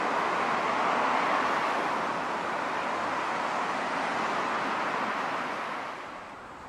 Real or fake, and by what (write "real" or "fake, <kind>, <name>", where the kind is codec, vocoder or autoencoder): real